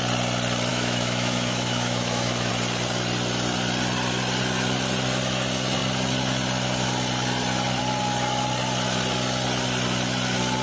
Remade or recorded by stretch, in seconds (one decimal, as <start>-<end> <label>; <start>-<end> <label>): 0.0-0.7 recorded; 0.7-2.5 remade; 2.5-10.6 recorded